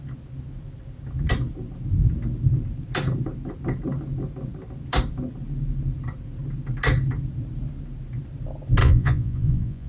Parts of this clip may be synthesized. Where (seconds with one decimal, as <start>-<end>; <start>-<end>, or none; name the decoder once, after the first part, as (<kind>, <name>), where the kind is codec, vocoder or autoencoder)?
8.8-9.9 (vocoder, Vocos)